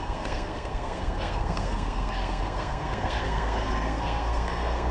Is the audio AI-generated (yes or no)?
yes